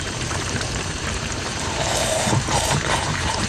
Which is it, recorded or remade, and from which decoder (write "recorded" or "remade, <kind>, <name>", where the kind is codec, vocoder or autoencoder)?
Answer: remade, vocoder, BigVGAN v2